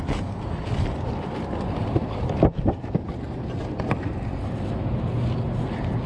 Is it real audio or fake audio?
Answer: real